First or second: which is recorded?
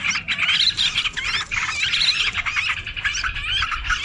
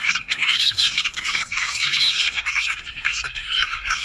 first